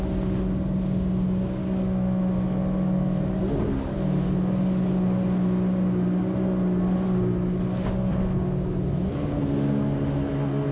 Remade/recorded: recorded